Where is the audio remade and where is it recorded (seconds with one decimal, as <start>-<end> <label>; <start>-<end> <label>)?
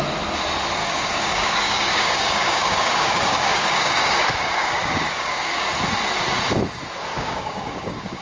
0.0-0.8 recorded; 0.8-5.7 remade; 5.7-7.1 recorded; 7.1-8.2 remade